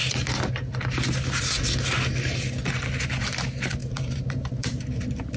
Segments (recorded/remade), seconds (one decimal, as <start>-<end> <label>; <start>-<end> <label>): 0.0-3.2 recorded; 3.2-5.4 remade